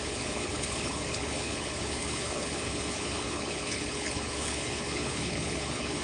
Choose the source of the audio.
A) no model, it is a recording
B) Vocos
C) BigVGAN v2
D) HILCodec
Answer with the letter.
D